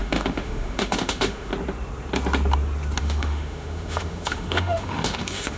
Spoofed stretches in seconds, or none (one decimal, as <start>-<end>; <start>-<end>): 0.0-1.5; 3.0-5.6